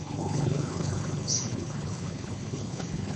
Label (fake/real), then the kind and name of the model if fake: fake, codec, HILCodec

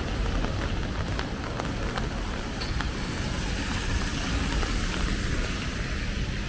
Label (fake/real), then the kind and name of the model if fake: real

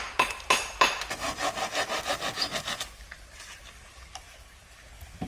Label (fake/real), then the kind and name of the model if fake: real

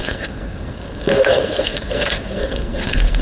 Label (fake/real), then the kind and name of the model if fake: fake, codec, SNAC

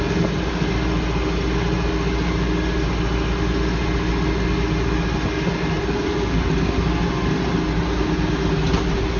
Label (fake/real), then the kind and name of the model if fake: real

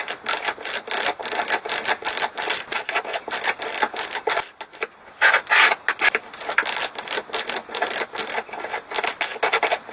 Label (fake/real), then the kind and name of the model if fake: real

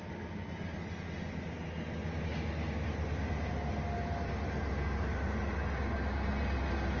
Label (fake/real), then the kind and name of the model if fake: real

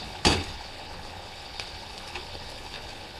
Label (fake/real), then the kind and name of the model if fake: fake, codec, HILCodec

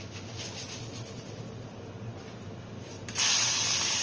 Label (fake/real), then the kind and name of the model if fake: real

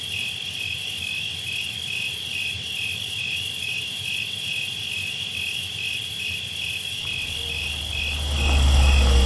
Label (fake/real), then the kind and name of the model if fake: real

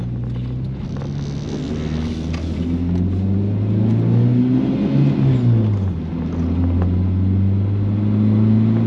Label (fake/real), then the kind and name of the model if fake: real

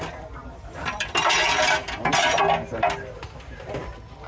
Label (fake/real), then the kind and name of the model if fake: real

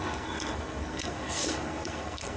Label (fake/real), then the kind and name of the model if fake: fake, codec, SNAC